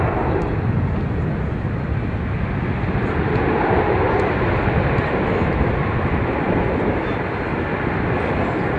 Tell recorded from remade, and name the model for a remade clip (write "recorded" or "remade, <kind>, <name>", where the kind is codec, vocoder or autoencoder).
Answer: recorded